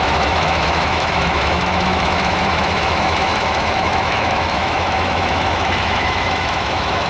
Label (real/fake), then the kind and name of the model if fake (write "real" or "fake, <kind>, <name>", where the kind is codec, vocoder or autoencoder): fake, autoencoder, DAC-VAE